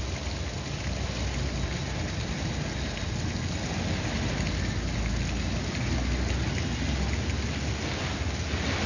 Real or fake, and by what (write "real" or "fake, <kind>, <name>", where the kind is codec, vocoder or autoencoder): real